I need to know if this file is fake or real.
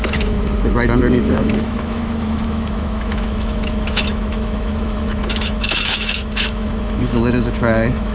fake